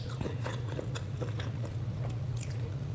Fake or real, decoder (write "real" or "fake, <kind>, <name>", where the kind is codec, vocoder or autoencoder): fake, vocoder, Vocos